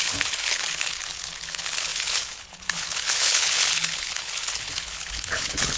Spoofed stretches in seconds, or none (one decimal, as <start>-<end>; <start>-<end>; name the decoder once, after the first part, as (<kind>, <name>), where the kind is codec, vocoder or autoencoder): 0.0-5.8 (codec, HILCodec)